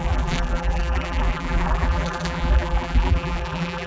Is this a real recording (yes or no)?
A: no